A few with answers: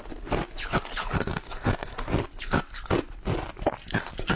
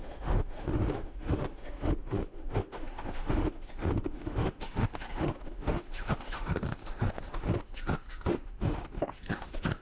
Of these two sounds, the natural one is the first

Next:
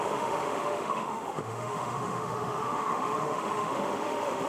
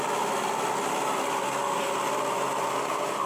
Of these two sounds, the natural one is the second